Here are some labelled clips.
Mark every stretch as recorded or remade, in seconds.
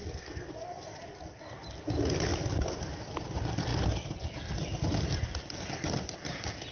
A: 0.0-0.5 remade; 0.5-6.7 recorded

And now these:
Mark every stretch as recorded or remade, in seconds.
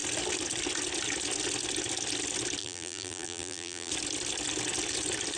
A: 0.0-2.6 recorded; 2.6-3.9 remade; 3.9-5.4 recorded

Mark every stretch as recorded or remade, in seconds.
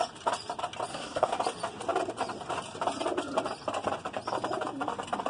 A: 0.0-0.9 recorded; 0.9-1.4 remade; 1.4-5.3 recorded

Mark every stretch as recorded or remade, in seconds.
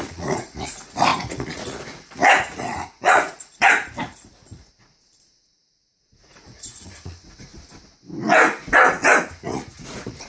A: 0.0-7.5 remade; 7.5-9.4 recorded; 9.4-10.3 remade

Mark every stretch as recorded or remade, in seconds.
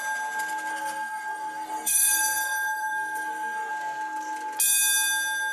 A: 0.0-0.7 recorded; 0.7-3.7 remade; 3.7-5.5 recorded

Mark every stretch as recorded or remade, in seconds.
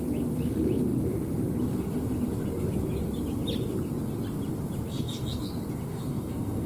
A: 0.0-4.9 recorded; 4.9-5.5 remade; 5.5-5.9 recorded; 5.9-6.7 remade